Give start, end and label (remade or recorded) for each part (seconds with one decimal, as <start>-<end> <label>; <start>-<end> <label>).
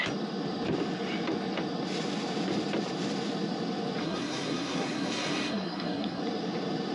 0.0-4.0 recorded; 4.0-6.2 remade; 6.2-6.9 recorded